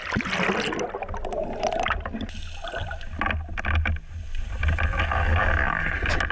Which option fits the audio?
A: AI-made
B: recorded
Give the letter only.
B